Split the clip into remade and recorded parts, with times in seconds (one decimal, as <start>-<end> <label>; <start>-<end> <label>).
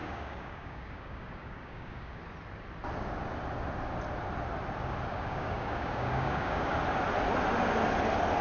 0.0-2.2 remade; 2.2-5.1 recorded; 5.1-6.7 remade; 6.7-8.4 recorded